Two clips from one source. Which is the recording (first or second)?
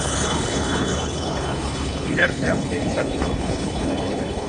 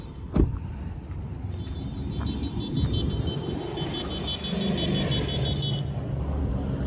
second